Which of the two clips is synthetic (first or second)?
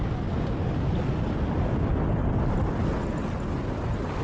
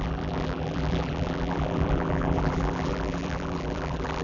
second